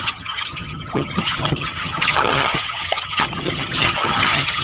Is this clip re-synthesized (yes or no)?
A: yes